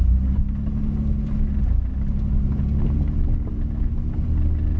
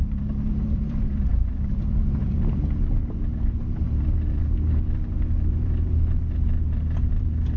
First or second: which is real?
first